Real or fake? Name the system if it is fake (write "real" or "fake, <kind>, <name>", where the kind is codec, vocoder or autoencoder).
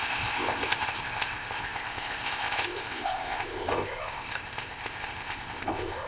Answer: fake, codec, ZipCodec